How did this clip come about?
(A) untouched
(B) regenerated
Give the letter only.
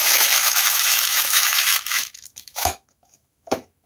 B